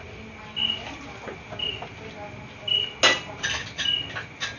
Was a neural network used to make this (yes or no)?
no